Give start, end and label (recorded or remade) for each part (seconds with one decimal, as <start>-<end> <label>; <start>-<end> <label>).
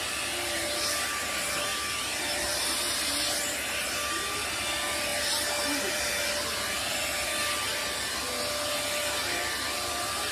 0.0-1.7 recorded; 1.7-2.5 remade; 2.5-5.1 recorded; 5.1-6.3 remade; 6.3-7.7 recorded; 7.7-8.2 remade; 8.2-10.3 recorded